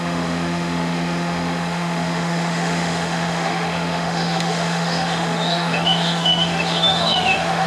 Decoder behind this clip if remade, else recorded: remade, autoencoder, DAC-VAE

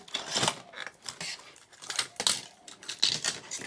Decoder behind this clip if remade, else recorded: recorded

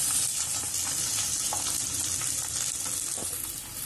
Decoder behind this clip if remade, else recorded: recorded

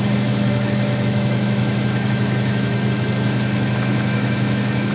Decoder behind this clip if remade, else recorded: remade, autoencoder, DAC-VAE